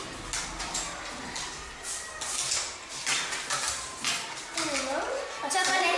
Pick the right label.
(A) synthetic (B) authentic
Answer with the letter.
B